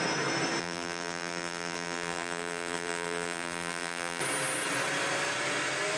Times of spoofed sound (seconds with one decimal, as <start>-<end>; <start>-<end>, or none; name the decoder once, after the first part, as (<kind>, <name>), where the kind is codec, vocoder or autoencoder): 0.6-4.2 (vocoder, BigVGAN v2)